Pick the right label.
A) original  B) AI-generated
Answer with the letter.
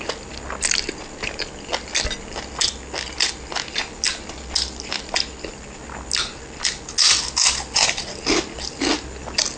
A